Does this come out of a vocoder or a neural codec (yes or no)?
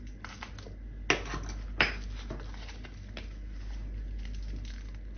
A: no